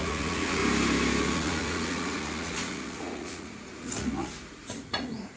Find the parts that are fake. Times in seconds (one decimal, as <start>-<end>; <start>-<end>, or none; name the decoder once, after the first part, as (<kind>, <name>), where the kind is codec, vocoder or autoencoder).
0.0-0.6 (vocoder, Vocos); 1.2-5.4